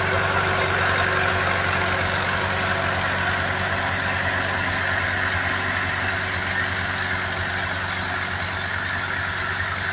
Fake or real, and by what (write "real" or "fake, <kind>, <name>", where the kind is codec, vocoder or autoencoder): real